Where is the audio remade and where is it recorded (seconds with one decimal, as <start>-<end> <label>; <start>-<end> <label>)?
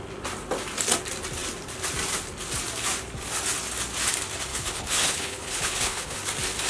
0.0-4.5 recorded; 4.5-6.2 remade; 6.2-6.7 recorded